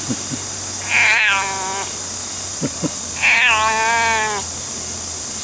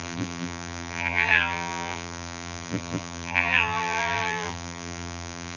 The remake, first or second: second